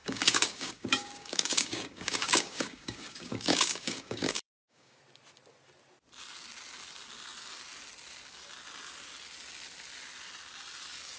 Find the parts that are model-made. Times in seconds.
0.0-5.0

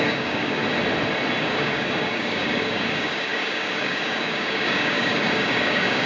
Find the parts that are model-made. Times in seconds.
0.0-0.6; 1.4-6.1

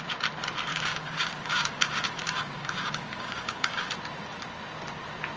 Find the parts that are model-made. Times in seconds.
0.7-3.9